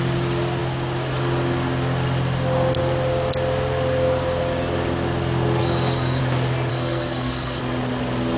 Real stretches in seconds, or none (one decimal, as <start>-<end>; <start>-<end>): 0.0-5.6; 6.2-6.7; 7.6-8.4

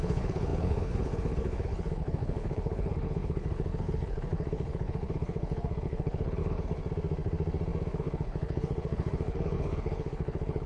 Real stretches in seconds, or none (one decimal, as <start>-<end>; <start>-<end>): 6.8-7.9

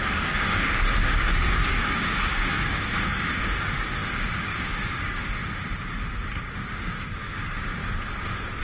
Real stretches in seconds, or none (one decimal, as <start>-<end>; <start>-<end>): 5.4-6.4; 7.8-8.6

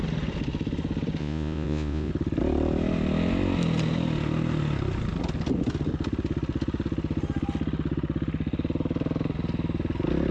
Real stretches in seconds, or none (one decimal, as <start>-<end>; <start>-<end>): 0.0-1.2; 2.1-10.3

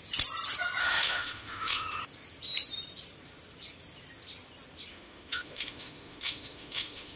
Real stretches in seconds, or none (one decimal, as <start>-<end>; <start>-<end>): 0.0-0.8; 2.0-4.9